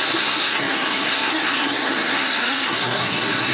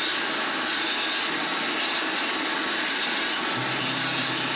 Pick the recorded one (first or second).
second